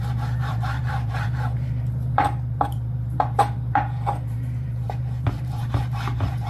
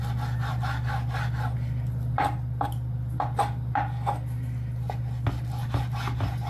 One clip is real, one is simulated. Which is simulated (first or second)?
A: first